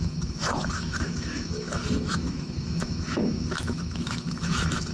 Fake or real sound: fake